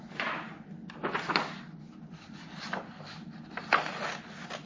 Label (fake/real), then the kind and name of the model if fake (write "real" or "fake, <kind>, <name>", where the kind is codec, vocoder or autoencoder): real